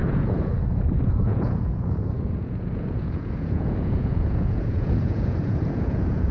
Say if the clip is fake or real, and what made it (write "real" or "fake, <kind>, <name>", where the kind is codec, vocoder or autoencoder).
fake, vocoder, Vocos